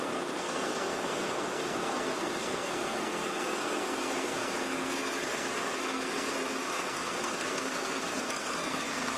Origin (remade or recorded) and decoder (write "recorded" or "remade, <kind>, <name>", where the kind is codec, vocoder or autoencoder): remade, codec, SNAC